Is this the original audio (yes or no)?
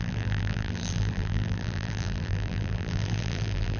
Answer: no